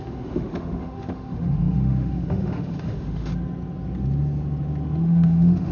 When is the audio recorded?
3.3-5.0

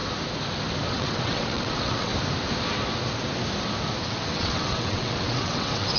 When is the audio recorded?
0.0-0.9; 2.1-4.0

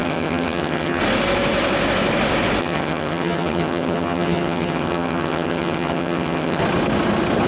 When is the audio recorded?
1.0-2.6; 6.6-7.5